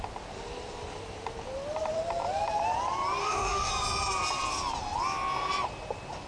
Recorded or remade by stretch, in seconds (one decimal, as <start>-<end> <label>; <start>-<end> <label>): 0.0-3.2 recorded; 3.2-3.7 remade; 3.7-6.3 recorded